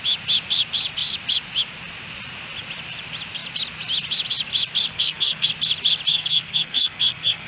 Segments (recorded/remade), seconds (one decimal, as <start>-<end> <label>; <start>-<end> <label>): 0.0-4.9 recorded; 4.9-5.5 remade; 5.5-6.1 recorded; 6.1-7.5 remade